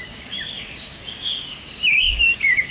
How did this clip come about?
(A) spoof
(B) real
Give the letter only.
A